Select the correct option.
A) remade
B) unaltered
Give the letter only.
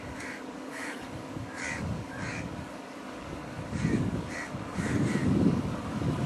A